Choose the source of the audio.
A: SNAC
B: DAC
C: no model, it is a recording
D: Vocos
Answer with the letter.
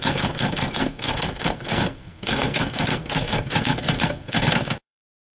A